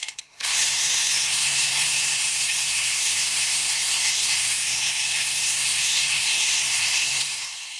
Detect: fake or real fake